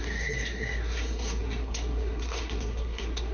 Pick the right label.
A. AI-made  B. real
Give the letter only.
A